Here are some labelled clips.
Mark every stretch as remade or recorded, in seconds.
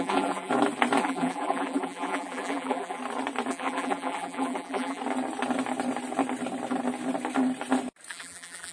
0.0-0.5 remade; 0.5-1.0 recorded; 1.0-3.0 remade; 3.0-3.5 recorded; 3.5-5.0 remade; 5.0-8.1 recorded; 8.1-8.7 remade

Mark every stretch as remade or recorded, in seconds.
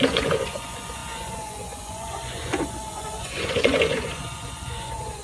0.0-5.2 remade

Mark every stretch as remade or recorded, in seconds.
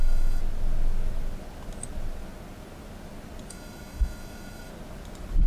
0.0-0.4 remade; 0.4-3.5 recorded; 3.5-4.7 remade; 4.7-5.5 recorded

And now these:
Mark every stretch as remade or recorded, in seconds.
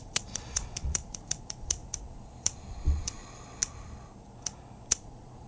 0.0-1.8 remade; 1.8-2.7 recorded; 2.7-3.2 remade; 3.2-4.9 recorded; 4.9-5.5 remade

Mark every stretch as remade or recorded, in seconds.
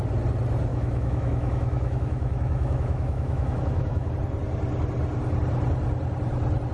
0.0-0.7 recorded; 0.7-4.1 remade; 4.1-6.7 recorded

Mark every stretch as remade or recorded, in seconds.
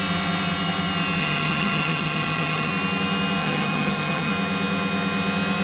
0.0-1.2 recorded; 1.2-2.7 remade; 2.7-3.4 recorded; 3.4-4.3 remade; 4.3-5.6 recorded